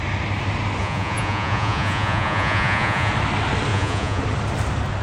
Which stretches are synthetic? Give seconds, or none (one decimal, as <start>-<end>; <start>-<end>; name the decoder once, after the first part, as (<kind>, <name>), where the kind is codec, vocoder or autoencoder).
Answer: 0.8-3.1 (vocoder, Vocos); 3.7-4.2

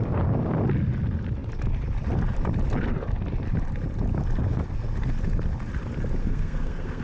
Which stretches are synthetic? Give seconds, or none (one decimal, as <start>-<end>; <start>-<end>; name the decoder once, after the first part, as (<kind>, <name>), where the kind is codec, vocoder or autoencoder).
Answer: 6.2-7.0 (codec, SNAC)

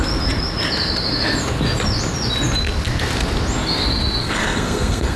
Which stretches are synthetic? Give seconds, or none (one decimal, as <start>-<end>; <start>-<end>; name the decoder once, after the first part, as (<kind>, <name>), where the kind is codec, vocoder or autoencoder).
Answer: 4.2-5.2 (codec, SNAC)

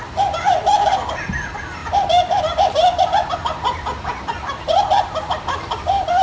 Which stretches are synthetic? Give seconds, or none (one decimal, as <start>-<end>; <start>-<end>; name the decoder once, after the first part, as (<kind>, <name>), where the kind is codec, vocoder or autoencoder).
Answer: 0.7-1.3 (vocoder, BigVGAN v2); 1.8-2.4